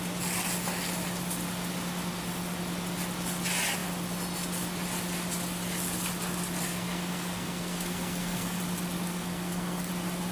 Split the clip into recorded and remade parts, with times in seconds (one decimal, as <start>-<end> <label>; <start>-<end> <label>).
0.0-6.7 recorded; 6.7-8.6 remade; 8.6-9.1 recorded; 9.1-9.9 remade; 9.9-10.3 recorded